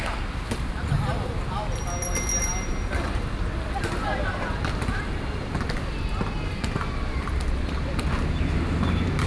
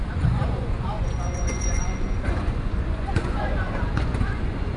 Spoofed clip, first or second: second